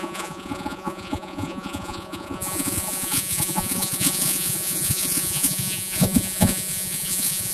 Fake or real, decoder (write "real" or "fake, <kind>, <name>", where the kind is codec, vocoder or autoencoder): fake, vocoder, Vocos